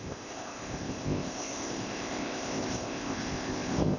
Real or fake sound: fake